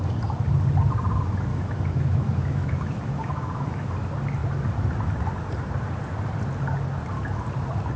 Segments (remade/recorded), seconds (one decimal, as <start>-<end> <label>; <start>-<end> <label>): 0.0-1.5 recorded; 1.5-3.9 remade; 3.9-8.0 recorded